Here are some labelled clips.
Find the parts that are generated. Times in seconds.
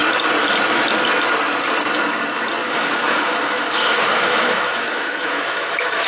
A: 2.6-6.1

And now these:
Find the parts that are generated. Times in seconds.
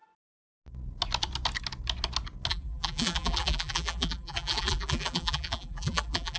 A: 2.5-6.4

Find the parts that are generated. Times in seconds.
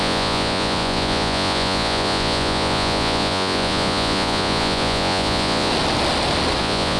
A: 0.0-5.7; 6.6-7.0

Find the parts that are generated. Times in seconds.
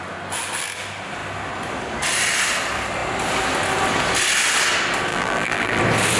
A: 5.1-5.8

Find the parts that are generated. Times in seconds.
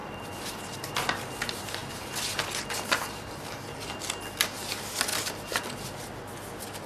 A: none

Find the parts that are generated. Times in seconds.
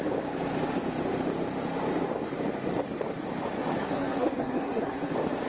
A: 3.8-5.1